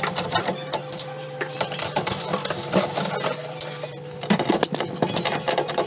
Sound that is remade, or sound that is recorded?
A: remade